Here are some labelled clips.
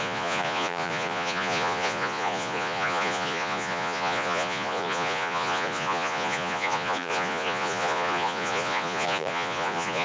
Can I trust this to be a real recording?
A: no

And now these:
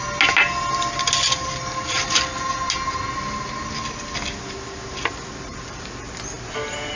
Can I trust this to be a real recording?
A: yes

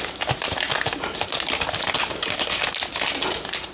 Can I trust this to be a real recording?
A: yes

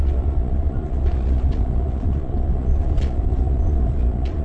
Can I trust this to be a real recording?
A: no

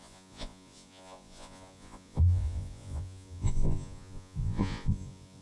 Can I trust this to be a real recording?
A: no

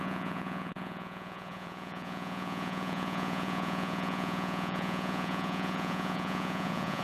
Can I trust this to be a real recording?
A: no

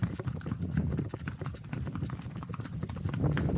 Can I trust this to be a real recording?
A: yes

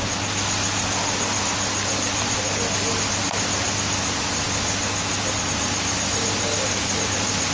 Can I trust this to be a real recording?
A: yes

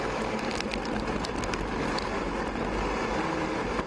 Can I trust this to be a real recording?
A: yes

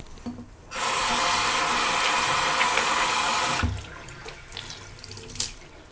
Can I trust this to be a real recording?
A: yes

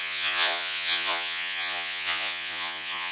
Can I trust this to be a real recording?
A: no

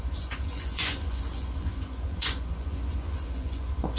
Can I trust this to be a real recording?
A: no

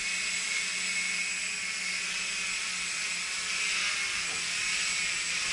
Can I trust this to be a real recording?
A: yes